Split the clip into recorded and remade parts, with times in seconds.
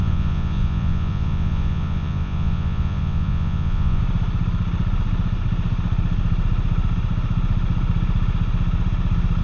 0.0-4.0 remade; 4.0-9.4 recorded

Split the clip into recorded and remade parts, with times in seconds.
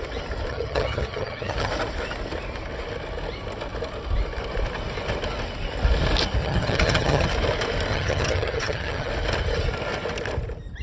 0.0-0.5 recorded; 0.5-1.7 remade; 1.7-6.4 recorded; 6.4-7.3 remade; 7.3-7.9 recorded; 7.9-9.1 remade; 9.1-10.8 recorded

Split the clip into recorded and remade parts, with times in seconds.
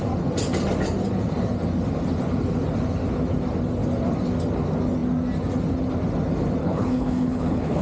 0.0-6.6 recorded; 6.6-7.8 remade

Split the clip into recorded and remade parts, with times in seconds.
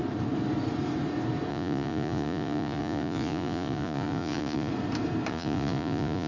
0.0-1.5 recorded; 1.5-4.7 remade; 4.7-5.3 recorded; 5.3-6.3 remade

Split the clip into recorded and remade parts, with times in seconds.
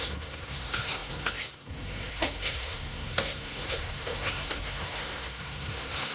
0.0-6.1 remade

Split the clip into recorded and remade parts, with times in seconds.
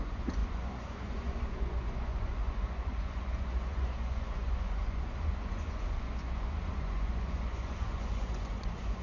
0.0-9.0 remade